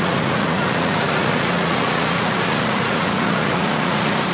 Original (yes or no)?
no